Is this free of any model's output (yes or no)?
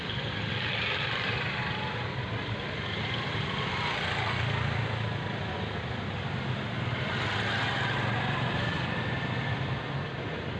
yes